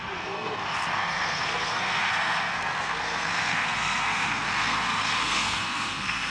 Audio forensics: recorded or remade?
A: remade